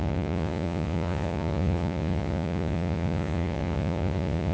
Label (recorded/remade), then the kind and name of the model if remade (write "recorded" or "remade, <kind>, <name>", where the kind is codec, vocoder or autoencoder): remade, vocoder, Vocos